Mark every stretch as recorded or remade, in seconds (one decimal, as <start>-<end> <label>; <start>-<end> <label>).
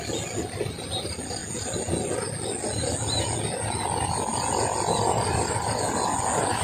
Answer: 0.0-6.6 recorded